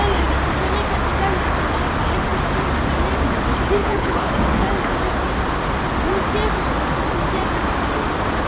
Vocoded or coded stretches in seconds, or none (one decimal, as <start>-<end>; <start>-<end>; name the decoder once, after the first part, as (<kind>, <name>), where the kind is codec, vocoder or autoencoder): 3.8-4.3 (codec, HILCodec)